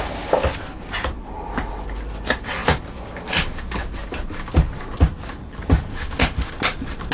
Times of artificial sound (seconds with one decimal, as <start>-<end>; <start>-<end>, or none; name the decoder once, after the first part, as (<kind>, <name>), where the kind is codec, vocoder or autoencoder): 5.9-6.5 (autoencoder, DAC-VAE)